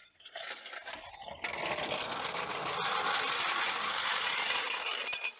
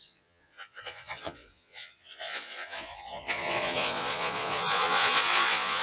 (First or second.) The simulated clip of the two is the second